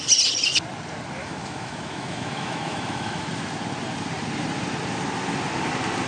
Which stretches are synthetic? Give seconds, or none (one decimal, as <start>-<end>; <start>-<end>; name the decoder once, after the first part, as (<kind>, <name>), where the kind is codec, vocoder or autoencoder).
1.2-3.3 (autoencoder, DAC-VAE)